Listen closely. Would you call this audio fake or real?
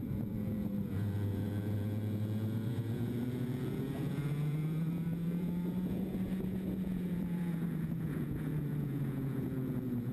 fake